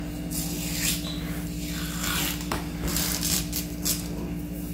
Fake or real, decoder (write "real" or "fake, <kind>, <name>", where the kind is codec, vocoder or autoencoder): real